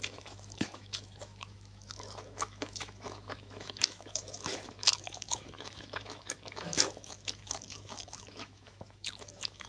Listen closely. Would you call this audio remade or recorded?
remade